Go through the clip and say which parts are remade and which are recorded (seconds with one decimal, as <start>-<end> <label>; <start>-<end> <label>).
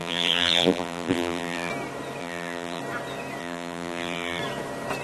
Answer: 0.0-1.7 remade; 1.7-2.2 recorded; 2.2-2.8 remade; 2.8-3.4 recorded; 3.4-4.4 remade; 4.4-5.0 recorded